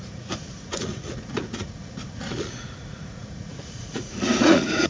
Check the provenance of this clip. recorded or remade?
remade